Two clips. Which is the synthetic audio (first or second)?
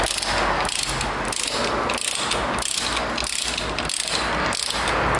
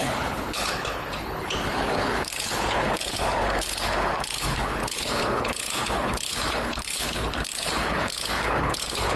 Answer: second